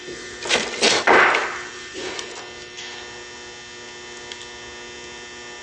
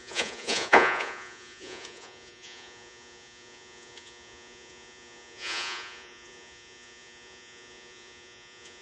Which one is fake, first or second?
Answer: second